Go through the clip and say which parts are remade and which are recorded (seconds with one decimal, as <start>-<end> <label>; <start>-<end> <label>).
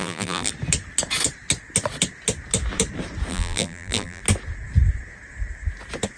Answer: 0.0-0.5 remade; 0.5-3.3 recorded; 3.3-4.2 remade; 4.2-6.2 recorded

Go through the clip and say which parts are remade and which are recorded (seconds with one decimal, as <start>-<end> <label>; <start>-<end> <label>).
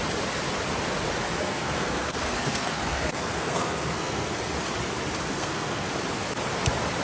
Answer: 0.0-1.4 recorded; 1.4-4.4 remade; 4.4-5.3 recorded; 5.3-5.9 remade; 5.9-7.0 recorded